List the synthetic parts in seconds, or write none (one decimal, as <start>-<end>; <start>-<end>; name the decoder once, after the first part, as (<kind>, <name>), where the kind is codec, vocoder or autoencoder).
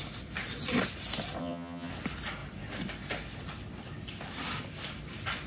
1.4-1.9 (vocoder, HiFi-GAN)